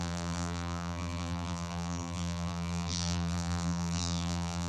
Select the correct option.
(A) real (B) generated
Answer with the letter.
B